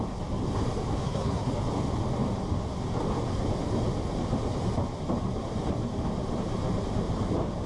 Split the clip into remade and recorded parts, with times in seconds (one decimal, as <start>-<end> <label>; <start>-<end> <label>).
0.0-1.0 recorded; 1.0-1.5 remade; 1.5-7.7 recorded